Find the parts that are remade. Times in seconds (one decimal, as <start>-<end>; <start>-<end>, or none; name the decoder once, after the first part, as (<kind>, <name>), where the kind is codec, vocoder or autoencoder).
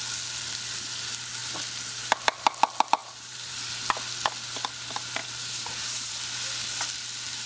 3.0-3.8 (vocoder, BigVGAN v2); 5.2-6.1